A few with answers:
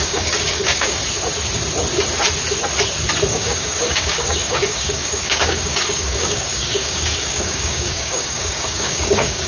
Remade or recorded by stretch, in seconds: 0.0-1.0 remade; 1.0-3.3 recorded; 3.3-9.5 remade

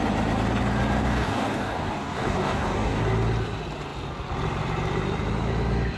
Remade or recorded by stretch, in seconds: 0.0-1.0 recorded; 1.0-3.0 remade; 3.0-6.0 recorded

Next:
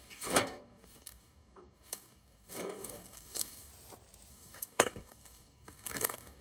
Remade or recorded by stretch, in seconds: 0.0-3.7 remade; 3.7-4.3 recorded; 4.3-6.4 remade